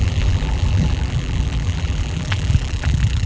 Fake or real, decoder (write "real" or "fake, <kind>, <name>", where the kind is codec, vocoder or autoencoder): fake, vocoder, BigVGAN v2